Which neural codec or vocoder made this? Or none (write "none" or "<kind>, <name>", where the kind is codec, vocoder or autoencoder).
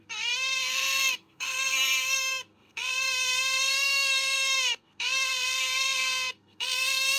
codec, SNAC